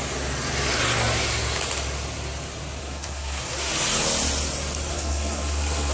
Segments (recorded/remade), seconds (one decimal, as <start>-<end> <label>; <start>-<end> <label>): 0.0-2.8 recorded; 2.8-3.7 remade; 3.7-4.9 recorded; 4.9-5.9 remade